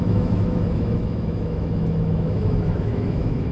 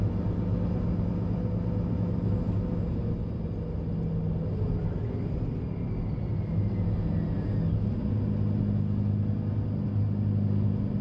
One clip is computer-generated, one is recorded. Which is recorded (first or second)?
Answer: second